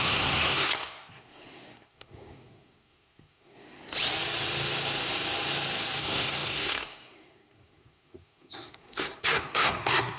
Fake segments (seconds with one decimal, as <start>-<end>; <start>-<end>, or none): 0.0-3.8; 6.0-10.2